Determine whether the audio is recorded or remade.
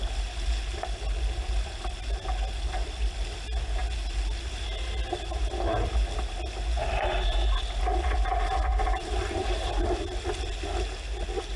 recorded